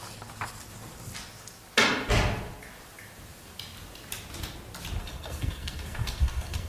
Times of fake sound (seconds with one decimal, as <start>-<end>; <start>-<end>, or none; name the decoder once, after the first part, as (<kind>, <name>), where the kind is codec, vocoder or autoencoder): 5.0-6.7 (codec, SNAC)